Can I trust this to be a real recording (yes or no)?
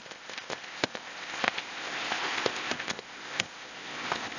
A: no